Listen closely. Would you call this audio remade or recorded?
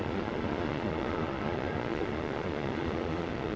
remade